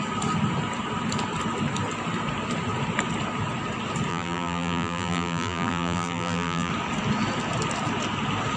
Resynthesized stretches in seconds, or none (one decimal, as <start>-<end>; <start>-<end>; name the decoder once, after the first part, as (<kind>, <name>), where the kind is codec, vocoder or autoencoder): 4.1-6.7 (vocoder, BigVGAN v2)